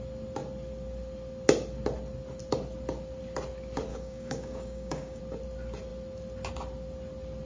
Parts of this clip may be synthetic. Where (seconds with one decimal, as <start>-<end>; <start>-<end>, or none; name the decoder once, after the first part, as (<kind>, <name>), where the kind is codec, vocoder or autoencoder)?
3.9-5.2 (codec, DAC)